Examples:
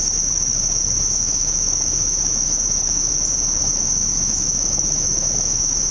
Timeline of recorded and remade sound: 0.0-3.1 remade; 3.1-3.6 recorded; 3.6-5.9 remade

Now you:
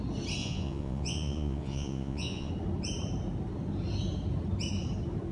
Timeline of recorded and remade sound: 0.0-0.4 recorded; 0.4-2.5 remade; 2.5-5.3 recorded

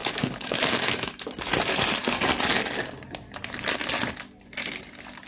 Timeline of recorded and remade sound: 0.0-1.1 remade; 1.1-5.3 recorded

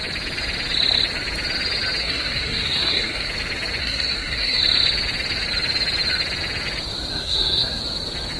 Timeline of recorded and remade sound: 0.0-2.0 recorded; 2.0-3.3 remade; 3.3-3.8 recorded; 3.8-4.6 remade; 4.6-7.1 recorded; 7.1-7.8 remade; 7.8-8.4 recorded

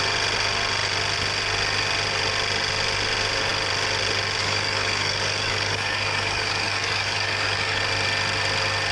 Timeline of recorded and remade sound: 0.0-4.4 recorded; 4.4-7.8 remade; 7.8-8.9 recorded

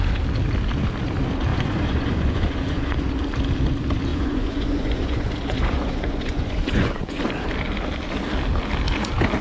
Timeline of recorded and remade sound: 0.0-1.5 recorded; 1.5-3.1 remade; 3.1-4.1 recorded; 4.1-7.2 remade; 7.2-9.4 recorded

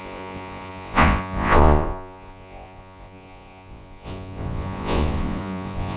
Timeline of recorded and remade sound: 0.0-6.0 remade